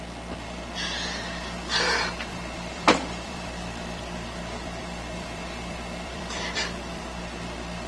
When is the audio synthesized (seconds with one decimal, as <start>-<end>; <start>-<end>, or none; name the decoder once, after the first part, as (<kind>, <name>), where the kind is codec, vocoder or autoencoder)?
2.3-7.0 (vocoder, BigVGAN v2)